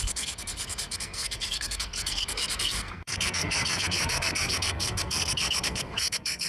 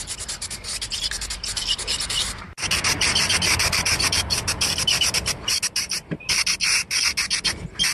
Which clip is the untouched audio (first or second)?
second